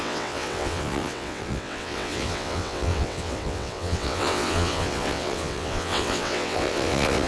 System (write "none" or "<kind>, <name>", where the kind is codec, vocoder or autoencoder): vocoder, WaveNeXt